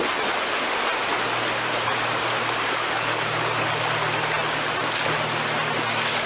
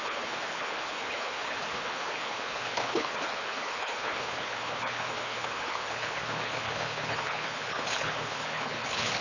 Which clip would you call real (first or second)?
first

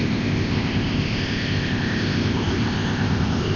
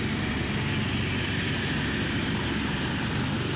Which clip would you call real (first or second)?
second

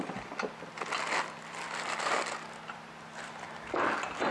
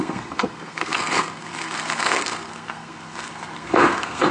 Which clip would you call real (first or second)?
first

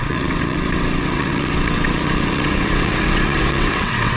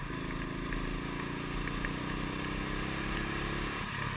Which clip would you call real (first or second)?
second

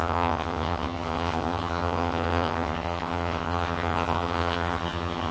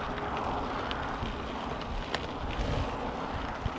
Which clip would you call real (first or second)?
second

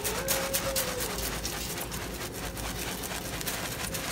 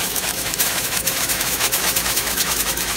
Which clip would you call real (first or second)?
first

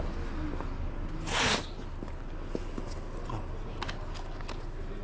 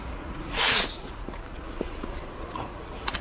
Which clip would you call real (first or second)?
first